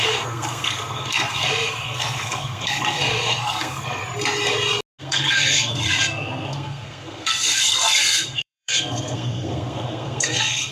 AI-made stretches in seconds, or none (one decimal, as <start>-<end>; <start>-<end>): 0.0-4.0; 5.0-10.7